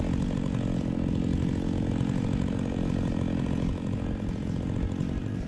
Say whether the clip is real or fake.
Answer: real